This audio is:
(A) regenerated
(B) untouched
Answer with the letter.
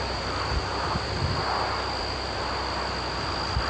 B